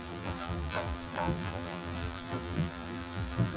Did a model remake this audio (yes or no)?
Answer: yes